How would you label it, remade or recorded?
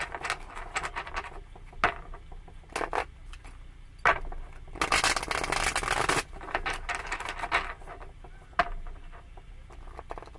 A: recorded